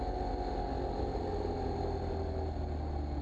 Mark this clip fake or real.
real